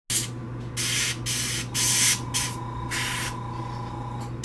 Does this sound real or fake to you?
real